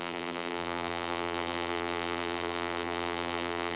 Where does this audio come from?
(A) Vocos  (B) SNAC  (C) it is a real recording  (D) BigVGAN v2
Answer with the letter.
D